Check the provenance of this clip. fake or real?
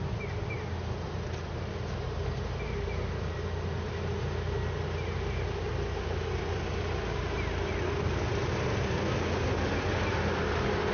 real